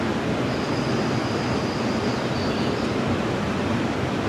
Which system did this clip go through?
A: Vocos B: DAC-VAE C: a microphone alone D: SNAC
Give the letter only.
C